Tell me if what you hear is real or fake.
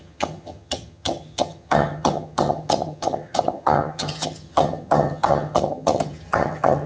fake